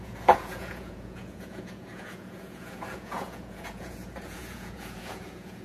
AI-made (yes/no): yes